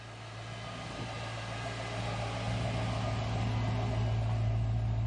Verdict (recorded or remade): recorded